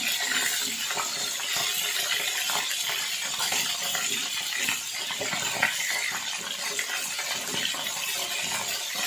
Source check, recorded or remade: recorded